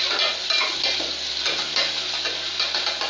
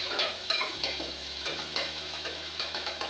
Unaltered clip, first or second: first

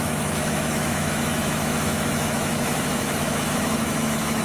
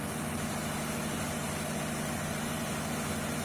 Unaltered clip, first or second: second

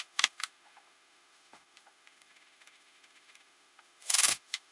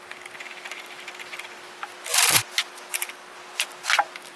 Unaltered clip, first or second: second